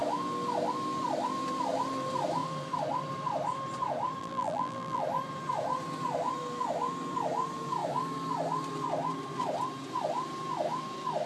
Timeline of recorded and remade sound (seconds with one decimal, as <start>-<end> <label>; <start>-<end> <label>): 0.0-4.2 recorded; 4.2-5.0 remade; 5.0-11.3 recorded

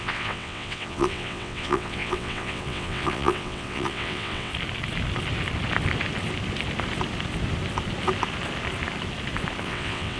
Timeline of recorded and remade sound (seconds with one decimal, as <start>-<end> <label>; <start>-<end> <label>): 0.0-4.5 remade; 4.5-9.6 recorded; 9.6-10.2 remade

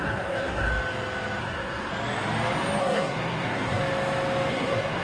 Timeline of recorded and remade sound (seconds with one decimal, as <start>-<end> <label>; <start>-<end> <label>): 0.0-0.7 remade; 0.7-1.4 recorded; 1.4-1.9 remade; 1.9-2.8 recorded; 2.8-3.8 remade; 3.8-4.5 recorded; 4.5-5.0 remade

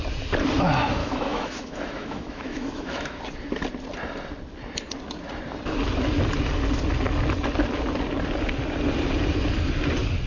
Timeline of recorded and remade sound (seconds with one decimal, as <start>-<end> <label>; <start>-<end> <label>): 0.0-1.0 recorded; 1.0-3.2 remade; 3.2-10.3 recorded

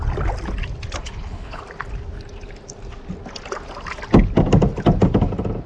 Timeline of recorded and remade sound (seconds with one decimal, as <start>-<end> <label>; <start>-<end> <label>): 0.0-1.0 recorded; 1.0-1.6 remade; 1.6-5.7 recorded

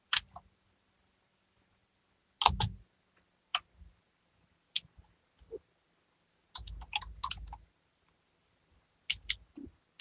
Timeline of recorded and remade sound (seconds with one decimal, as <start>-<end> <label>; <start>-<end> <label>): 0.0-10.0 recorded

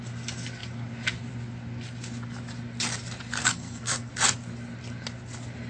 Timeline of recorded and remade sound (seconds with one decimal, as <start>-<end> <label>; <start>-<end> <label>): 0.0-3.4 recorded; 3.4-4.1 remade; 4.1-5.7 recorded